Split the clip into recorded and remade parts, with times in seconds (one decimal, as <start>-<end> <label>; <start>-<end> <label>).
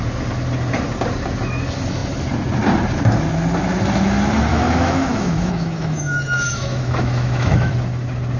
0.0-4.5 recorded; 4.5-7.7 remade; 7.7-8.4 recorded